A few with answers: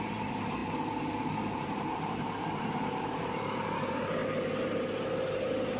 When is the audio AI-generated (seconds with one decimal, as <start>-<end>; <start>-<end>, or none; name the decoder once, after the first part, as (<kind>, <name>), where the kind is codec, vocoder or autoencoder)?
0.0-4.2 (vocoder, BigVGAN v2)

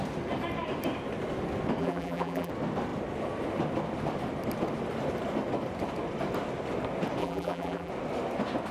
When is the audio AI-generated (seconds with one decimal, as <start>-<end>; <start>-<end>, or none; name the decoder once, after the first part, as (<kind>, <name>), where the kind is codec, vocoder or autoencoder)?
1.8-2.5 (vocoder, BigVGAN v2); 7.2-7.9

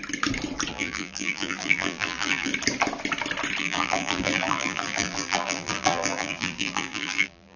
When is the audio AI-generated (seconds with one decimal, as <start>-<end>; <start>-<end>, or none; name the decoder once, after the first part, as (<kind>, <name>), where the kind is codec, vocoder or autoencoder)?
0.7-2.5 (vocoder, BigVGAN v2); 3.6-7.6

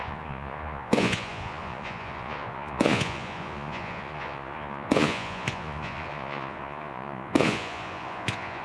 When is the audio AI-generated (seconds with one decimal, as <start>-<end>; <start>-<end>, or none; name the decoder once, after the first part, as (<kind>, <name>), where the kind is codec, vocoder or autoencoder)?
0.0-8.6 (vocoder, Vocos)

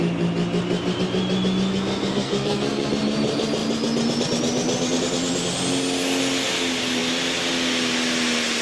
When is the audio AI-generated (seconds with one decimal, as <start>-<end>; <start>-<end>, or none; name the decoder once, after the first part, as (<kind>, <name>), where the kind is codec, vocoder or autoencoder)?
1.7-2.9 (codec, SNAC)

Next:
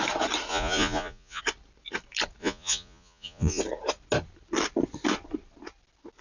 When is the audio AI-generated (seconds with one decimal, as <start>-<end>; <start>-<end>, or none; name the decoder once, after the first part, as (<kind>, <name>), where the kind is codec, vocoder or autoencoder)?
0.5-1.4 (vocoder, Vocos); 2.4-3.6

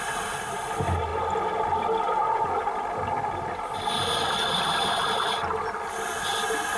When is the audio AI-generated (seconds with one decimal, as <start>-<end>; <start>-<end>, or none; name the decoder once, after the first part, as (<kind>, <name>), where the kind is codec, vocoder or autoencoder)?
none

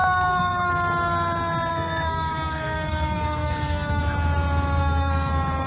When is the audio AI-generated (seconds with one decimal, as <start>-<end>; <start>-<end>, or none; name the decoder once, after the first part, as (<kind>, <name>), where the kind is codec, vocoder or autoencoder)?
0.0-0.7 (codec, SNAC); 1.7-4.0; 4.8-5.3